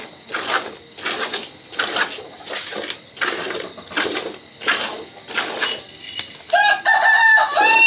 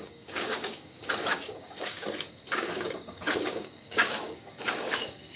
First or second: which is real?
first